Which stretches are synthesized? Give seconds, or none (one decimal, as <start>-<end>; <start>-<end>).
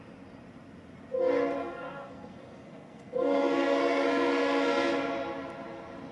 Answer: 1.6-4.9